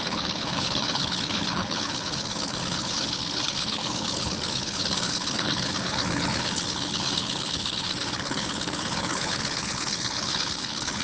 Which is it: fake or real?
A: fake